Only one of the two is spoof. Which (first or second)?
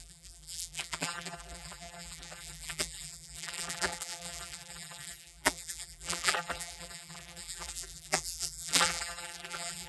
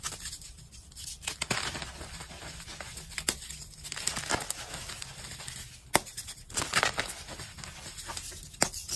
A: first